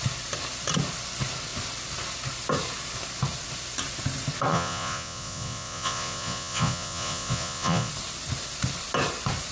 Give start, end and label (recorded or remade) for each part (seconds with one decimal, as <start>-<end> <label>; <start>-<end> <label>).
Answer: 0.0-4.5 recorded; 4.5-7.9 remade; 7.9-9.5 recorded